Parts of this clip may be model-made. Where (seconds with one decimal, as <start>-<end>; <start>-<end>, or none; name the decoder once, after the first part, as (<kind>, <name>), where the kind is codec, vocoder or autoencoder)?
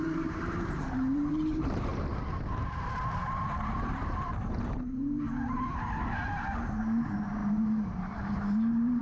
0.0-9.0 (vocoder, BigVGAN v2)